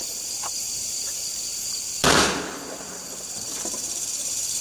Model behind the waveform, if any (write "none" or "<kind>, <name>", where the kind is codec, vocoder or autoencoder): vocoder, BigVGAN v2